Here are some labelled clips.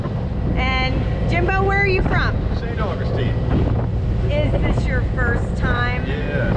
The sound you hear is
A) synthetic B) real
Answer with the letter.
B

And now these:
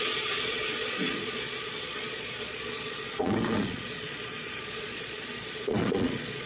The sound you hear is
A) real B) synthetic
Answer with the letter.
B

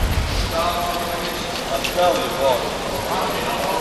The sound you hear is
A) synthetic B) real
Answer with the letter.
B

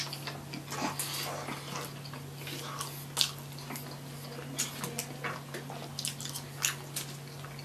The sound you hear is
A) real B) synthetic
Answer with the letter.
A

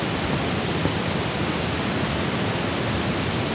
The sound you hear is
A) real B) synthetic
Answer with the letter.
A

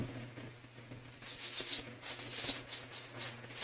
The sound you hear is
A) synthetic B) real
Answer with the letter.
B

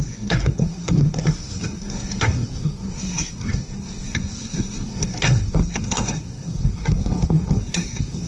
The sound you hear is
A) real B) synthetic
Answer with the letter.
B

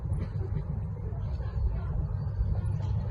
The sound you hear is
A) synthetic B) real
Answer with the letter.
B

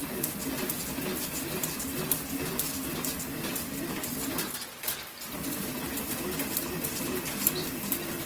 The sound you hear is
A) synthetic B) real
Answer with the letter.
B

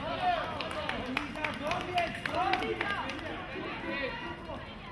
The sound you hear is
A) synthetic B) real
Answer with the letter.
B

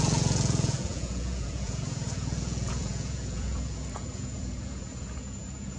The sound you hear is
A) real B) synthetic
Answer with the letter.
B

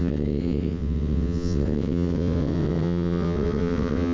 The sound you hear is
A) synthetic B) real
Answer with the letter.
A